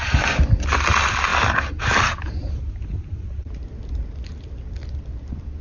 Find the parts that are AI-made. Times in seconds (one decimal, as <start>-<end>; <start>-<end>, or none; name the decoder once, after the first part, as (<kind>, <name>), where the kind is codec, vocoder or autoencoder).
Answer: none